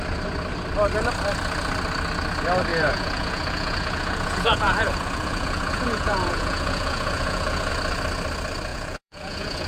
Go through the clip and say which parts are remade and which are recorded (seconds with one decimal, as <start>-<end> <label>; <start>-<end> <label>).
0.0-2.7 recorded; 2.7-7.7 remade; 7.7-8.7 recorded; 8.7-9.7 remade